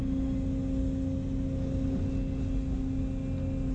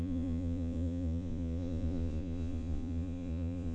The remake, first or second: second